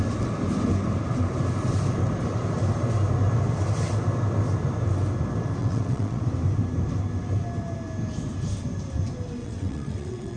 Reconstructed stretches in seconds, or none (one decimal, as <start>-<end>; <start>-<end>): 5.6-6.2; 9.4-10.4